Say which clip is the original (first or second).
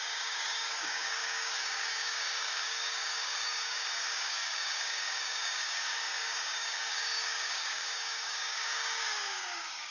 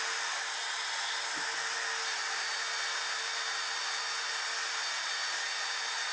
second